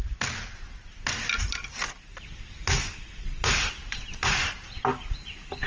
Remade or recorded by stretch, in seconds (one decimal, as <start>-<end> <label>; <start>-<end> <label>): 0.0-5.7 recorded